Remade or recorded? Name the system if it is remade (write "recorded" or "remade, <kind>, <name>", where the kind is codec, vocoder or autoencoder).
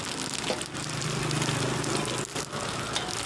recorded